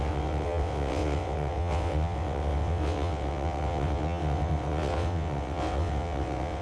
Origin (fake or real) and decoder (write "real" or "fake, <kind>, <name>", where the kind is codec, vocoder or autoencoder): fake, vocoder, WaveNeXt